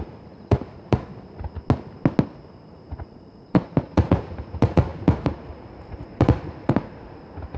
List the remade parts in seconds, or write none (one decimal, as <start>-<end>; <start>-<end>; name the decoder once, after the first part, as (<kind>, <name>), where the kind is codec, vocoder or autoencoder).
0.0-1.1 (vocoder, Vocos); 2.7-7.6